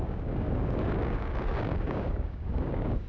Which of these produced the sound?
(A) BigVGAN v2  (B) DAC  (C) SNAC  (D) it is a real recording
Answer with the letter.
B